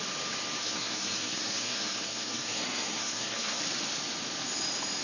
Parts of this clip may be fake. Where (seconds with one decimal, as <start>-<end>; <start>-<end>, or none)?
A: 0.6-3.6